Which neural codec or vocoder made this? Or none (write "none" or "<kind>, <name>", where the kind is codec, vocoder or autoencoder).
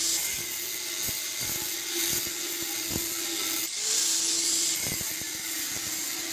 none